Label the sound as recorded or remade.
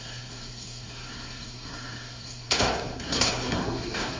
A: remade